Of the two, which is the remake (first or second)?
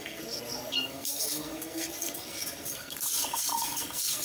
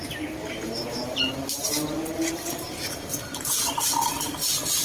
first